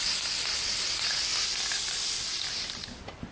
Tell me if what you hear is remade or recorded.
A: recorded